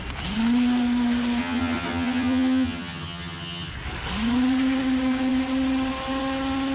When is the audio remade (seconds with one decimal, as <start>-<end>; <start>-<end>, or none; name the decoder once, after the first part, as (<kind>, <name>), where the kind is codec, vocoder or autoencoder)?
1.4-3.7 (vocoder, HiFi-GAN)